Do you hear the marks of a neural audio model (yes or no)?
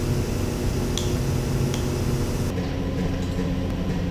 no